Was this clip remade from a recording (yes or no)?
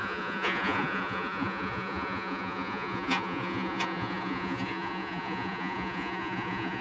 yes